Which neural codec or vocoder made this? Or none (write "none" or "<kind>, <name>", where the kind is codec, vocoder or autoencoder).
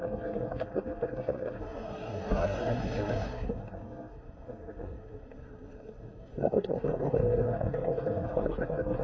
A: codec, SNAC